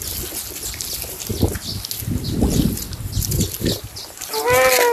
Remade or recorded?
recorded